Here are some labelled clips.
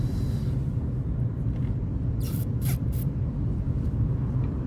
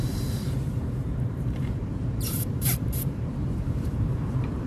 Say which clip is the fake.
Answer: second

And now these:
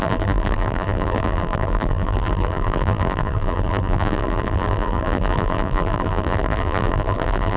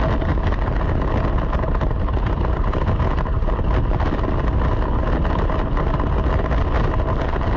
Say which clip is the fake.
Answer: first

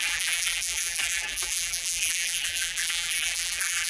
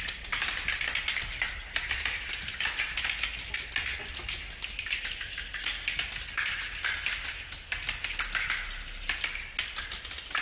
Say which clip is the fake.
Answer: first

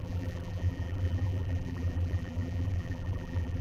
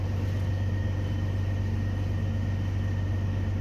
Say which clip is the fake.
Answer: first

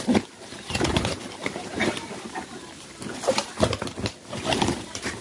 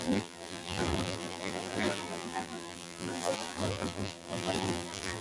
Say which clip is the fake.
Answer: second